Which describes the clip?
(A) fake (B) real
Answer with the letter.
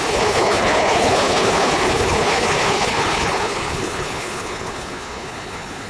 A